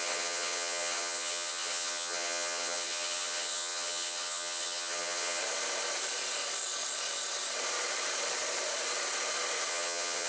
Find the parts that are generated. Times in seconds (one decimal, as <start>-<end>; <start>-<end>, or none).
0.0-5.4; 9.7-10.3

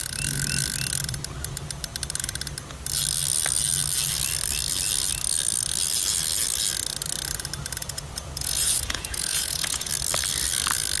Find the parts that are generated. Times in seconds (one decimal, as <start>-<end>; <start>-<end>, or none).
7.8-9.9

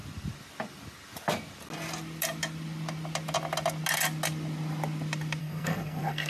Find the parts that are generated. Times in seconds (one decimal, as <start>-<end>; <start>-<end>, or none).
5.4-6.3

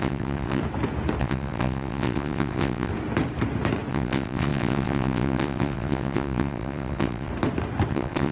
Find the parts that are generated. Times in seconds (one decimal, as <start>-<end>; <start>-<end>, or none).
0.0-0.6; 1.2-2.9; 3.9-7.3; 7.9-8.3